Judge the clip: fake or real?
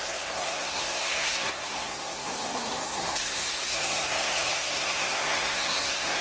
fake